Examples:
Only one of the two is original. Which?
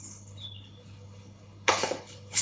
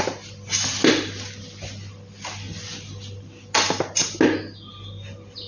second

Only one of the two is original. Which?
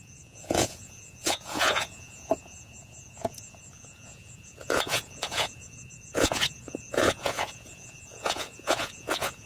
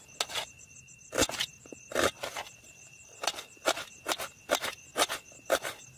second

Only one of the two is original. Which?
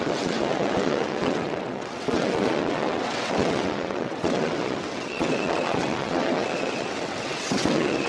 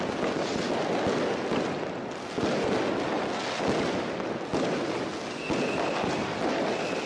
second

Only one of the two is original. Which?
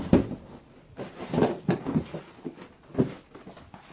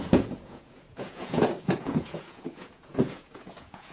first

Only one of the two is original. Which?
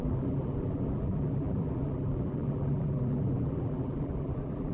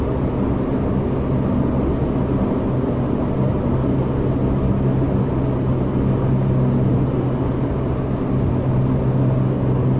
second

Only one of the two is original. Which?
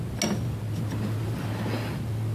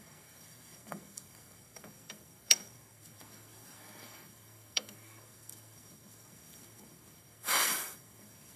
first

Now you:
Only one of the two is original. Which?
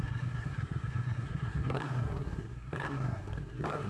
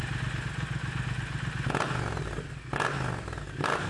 second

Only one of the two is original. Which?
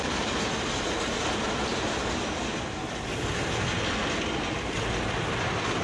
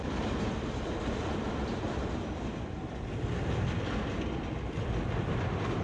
first